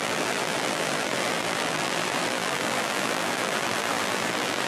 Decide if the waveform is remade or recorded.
remade